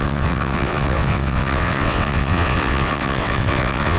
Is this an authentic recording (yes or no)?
no